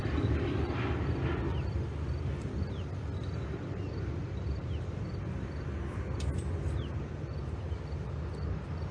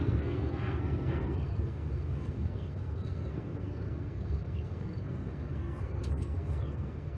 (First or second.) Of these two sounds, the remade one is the second